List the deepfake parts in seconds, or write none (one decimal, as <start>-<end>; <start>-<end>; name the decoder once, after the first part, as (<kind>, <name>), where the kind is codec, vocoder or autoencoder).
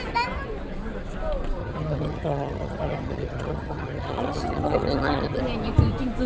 1.6-5.4 (vocoder, HiFi-GAN)